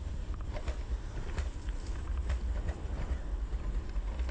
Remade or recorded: recorded